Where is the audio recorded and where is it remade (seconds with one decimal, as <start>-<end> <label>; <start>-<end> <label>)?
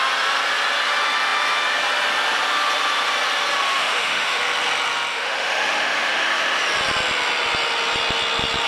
0.0-3.6 recorded; 3.6-4.4 remade; 4.4-5.1 recorded; 5.1-6.6 remade; 6.6-8.7 recorded